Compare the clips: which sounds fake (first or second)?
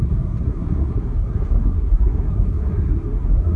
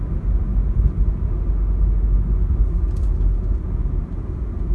first